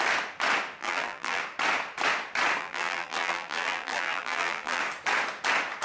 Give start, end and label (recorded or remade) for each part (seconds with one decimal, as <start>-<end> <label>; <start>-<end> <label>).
0.0-0.8 recorded; 0.8-1.4 remade; 1.4-2.6 recorded; 2.6-4.8 remade; 4.8-5.8 recorded